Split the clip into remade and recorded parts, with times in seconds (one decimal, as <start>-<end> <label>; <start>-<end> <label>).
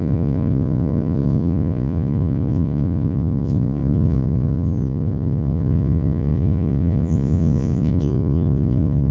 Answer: 0.0-9.1 remade